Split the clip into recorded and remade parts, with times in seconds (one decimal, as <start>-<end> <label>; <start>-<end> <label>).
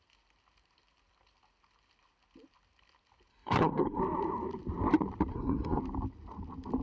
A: 0.0-3.3 recorded; 3.3-4.0 remade; 4.0-5.3 recorded; 5.3-5.8 remade; 5.8-6.8 recorded